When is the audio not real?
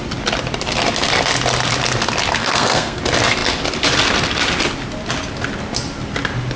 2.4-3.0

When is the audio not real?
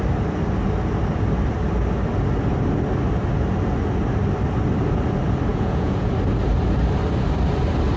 5.5-6.1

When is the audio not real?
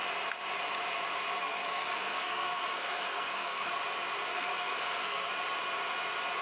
1.4-3.7; 4.3-5.3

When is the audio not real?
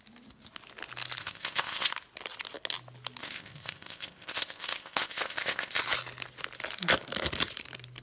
1.2-1.9; 3.2-5.8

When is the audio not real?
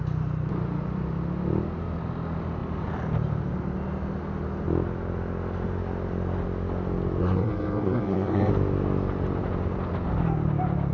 7.2-8.5